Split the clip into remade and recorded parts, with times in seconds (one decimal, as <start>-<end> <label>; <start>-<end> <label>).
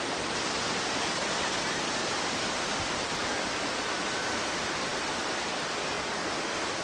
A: 0.0-6.8 recorded